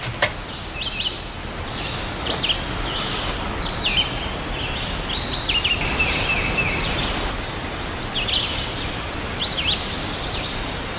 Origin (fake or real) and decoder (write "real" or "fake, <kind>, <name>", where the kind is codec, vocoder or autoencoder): real